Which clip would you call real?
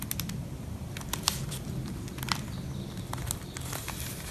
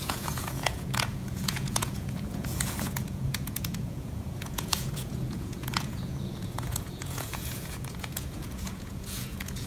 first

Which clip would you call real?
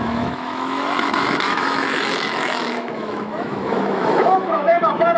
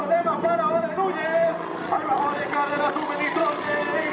second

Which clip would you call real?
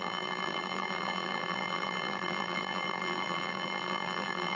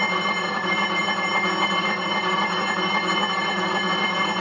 second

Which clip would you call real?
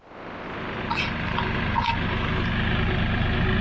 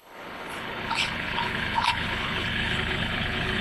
first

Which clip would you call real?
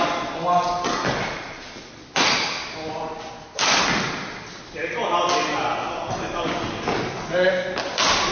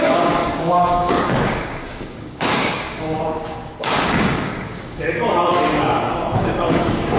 first